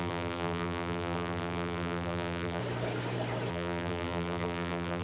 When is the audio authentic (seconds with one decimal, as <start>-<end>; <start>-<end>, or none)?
2.6-3.5